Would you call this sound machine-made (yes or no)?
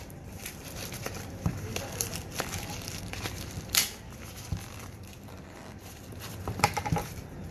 yes